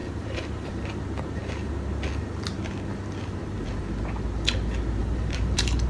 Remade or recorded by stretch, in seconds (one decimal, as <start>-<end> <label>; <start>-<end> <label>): 0.0-0.7 remade; 0.7-5.0 recorded; 5.0-5.9 remade